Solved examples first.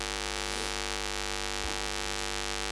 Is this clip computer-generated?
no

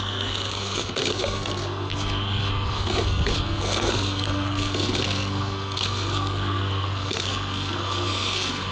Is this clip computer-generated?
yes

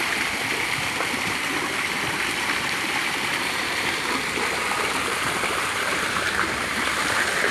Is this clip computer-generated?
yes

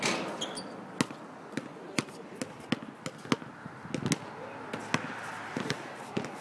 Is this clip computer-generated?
no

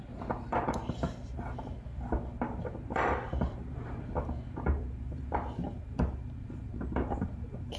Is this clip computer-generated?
yes